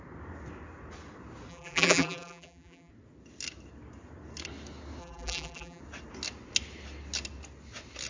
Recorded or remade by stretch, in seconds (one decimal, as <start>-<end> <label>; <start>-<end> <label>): 0.0-1.5 recorded; 1.5-2.9 remade; 2.9-5.0 recorded; 5.0-5.8 remade; 5.8-8.1 recorded